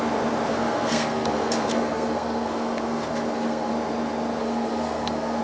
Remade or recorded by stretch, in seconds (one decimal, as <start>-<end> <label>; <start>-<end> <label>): 0.0-0.5 recorded; 0.5-3.7 remade; 3.7-4.4 recorded; 4.4-5.4 remade